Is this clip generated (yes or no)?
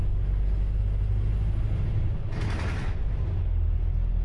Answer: no